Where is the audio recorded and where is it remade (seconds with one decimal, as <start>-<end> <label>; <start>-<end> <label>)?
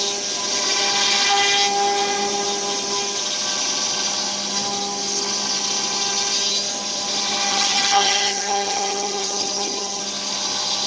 0.0-7.5 recorded; 7.5-10.0 remade; 10.0-10.9 recorded